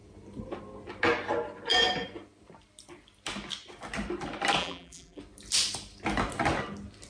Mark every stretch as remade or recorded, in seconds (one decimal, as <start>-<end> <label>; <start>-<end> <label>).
0.0-4.6 recorded; 4.6-5.2 remade; 5.2-7.1 recorded